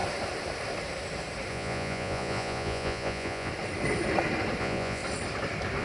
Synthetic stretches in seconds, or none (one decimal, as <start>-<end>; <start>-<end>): 1.5-3.5; 4.6-5.0

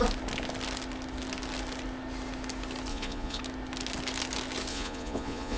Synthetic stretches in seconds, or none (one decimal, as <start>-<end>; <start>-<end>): 2.9-3.4; 4.7-5.6

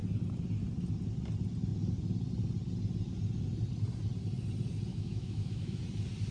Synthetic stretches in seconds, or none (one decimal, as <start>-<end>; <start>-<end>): 4.9-5.8

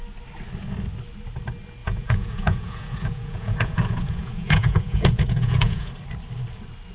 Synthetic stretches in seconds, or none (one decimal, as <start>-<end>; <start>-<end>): 1.8-5.9